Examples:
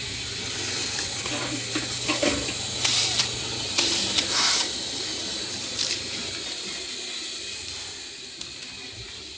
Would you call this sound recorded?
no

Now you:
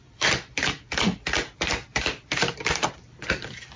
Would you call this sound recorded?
no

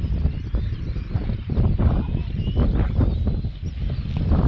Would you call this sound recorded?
yes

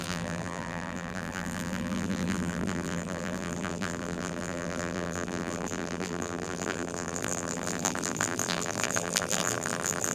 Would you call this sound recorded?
no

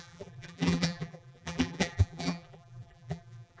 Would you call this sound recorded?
no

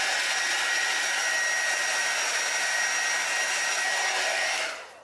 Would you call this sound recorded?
yes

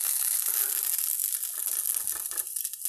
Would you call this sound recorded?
yes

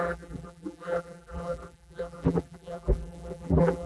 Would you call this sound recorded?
no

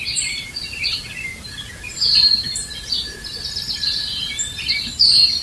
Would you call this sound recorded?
no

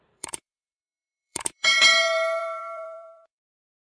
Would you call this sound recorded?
no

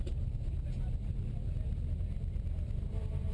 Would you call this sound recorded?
no